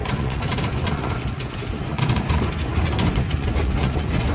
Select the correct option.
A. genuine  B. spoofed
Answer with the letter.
B